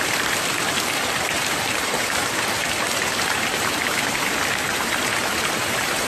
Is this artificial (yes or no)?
yes